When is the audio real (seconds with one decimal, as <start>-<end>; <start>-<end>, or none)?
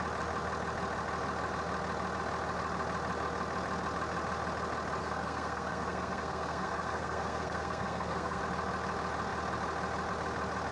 0.0-5.0; 8.4-10.7